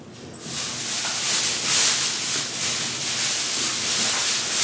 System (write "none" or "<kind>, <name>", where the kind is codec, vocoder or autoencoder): none